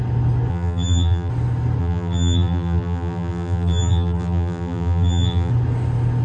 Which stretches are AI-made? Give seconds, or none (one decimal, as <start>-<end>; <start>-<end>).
0.5-1.3; 1.8-5.5